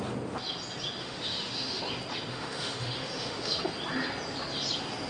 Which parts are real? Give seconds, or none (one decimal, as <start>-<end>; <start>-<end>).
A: 0.0-1.0; 1.8-2.3; 3.6-5.1

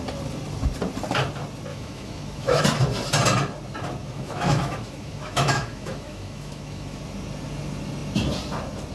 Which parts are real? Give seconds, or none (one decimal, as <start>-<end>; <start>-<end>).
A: 0.0-1.7; 2.6-4.0; 7.0-8.9

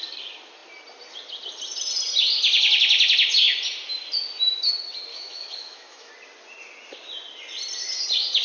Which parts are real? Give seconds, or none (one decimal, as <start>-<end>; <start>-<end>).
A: 0.0-5.1; 6.1-8.4